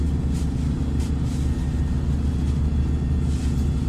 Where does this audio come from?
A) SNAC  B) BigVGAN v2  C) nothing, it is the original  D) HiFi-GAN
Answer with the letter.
C